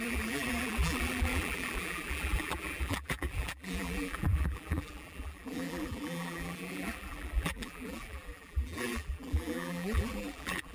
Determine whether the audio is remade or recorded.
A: remade